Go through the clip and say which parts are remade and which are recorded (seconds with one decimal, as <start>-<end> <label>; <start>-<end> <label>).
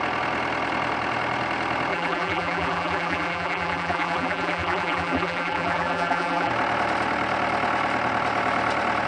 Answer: 0.0-1.9 recorded; 1.9-6.5 remade; 6.5-9.1 recorded